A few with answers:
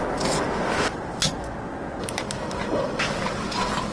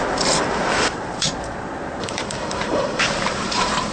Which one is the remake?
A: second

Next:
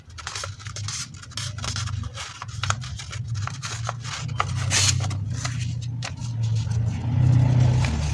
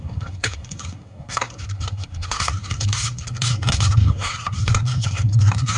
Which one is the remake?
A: second